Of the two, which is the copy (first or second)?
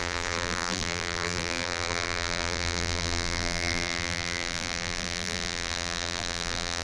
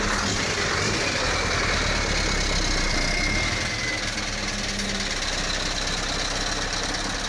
first